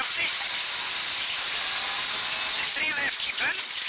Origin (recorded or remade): recorded